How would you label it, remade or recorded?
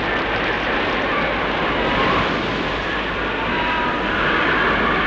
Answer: recorded